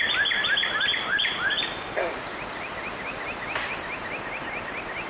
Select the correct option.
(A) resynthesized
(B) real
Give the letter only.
B